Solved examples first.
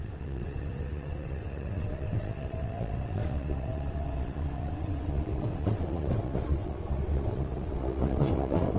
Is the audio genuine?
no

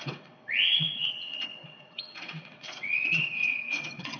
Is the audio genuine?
no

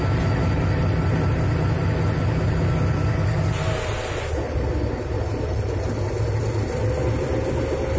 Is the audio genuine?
yes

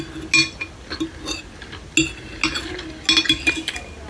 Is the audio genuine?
yes